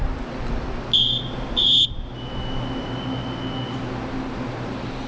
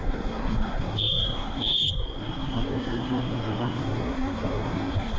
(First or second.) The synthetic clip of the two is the second